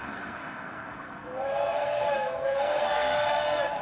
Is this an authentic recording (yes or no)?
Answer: no